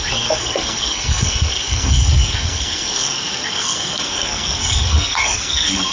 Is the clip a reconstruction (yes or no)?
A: yes